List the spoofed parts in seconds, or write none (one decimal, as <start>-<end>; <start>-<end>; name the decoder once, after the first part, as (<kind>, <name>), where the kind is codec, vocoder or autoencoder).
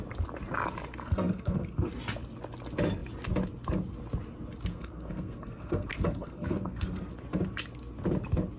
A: 1.0-1.9 (codec, SNAC); 4.7-7.1